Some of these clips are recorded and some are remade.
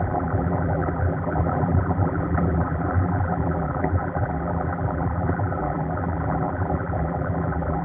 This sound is remade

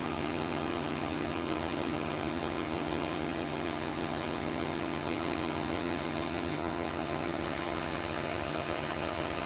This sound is remade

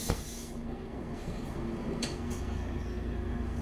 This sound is remade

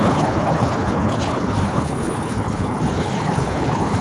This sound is remade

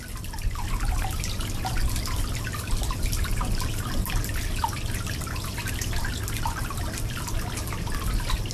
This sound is recorded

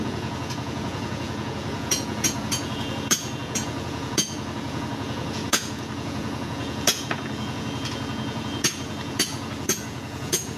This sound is remade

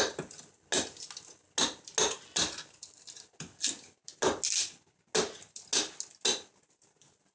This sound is recorded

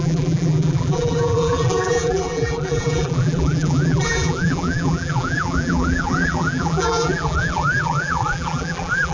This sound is remade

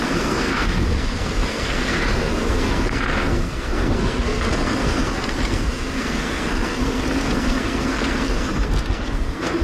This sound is remade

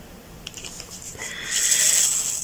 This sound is recorded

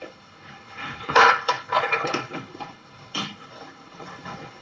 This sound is remade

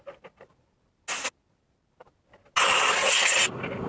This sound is recorded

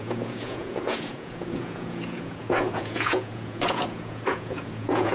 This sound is remade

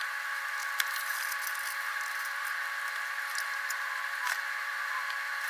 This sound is recorded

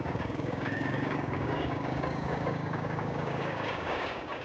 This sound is remade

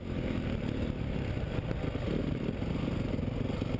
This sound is recorded